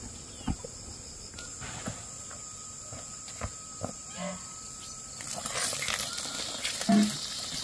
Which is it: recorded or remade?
recorded